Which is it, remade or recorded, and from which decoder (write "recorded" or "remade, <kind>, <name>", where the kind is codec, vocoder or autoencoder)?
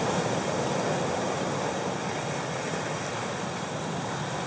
recorded